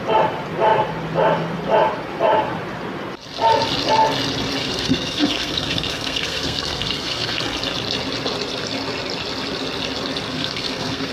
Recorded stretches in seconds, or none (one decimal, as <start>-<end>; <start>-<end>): 0.0-4.6; 7.4-10.3